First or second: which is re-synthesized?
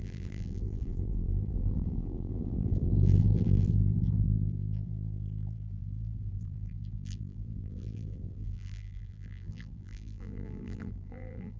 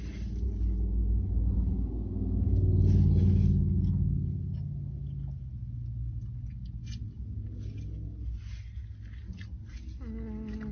first